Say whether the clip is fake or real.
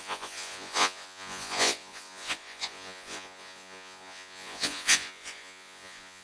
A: fake